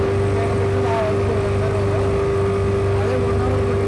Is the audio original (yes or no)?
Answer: yes